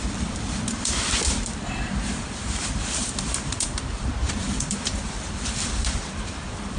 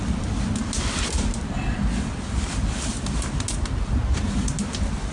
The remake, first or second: first